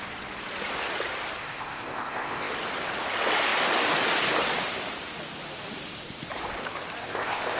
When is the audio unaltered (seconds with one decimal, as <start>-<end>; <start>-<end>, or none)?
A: 0.0-1.4; 2.5-7.0